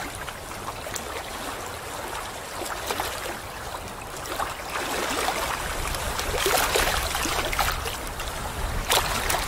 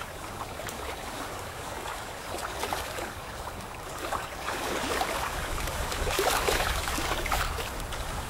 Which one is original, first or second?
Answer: first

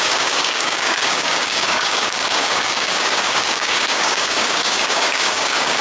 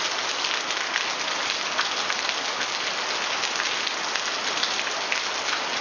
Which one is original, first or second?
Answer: second